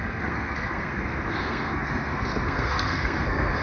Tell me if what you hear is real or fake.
fake